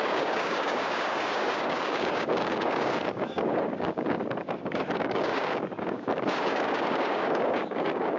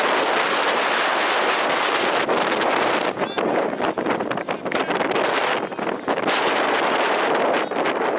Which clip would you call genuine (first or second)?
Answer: second